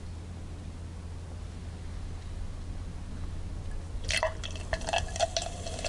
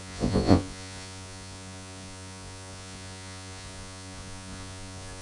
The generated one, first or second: second